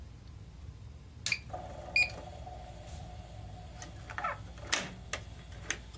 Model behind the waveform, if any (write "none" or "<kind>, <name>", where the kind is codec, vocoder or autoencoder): none